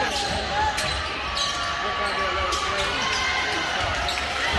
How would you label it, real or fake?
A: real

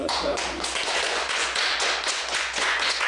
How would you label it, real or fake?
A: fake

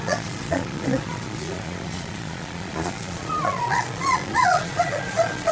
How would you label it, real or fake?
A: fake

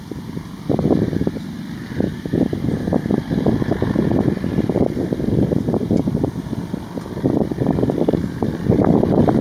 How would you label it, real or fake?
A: fake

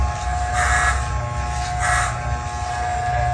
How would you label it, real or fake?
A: real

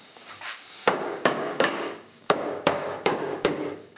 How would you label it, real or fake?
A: fake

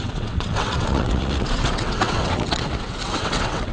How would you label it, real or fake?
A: fake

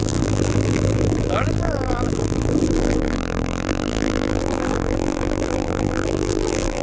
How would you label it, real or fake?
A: fake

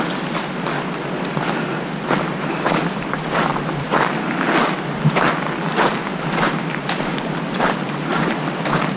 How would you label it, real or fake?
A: real